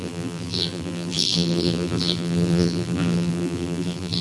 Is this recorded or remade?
remade